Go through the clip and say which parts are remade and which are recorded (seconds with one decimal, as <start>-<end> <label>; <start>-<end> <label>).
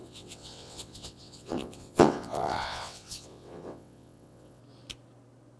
0.0-4.6 remade; 4.6-5.6 recorded